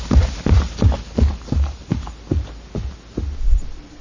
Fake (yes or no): no